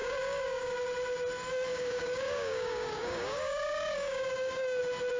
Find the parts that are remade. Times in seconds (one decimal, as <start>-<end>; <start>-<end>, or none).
0.0-0.6; 1.7-4.8